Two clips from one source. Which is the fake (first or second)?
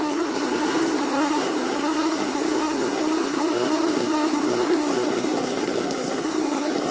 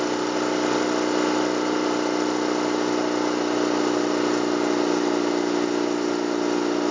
first